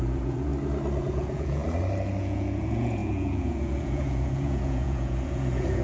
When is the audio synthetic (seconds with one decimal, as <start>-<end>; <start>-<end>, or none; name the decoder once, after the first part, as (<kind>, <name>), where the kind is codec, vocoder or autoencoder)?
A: 0.0-0.5 (vocoder, Vocos); 1.0-1.6; 2.2-5.8